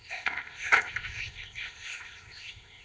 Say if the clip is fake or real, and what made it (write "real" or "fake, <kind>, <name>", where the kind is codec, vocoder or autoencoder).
fake, codec, ZipCodec